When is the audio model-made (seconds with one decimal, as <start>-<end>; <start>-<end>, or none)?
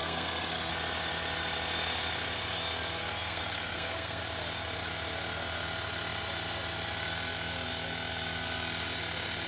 0.0-0.7; 3.0-4.2